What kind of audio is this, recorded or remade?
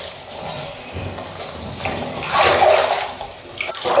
recorded